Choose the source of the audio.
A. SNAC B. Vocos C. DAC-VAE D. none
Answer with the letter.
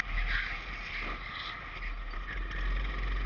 D